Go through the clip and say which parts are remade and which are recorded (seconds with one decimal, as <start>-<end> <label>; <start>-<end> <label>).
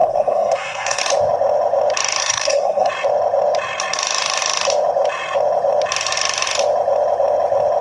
0.0-1.0 remade; 1.0-2.2 recorded; 2.2-2.9 remade; 2.9-7.8 recorded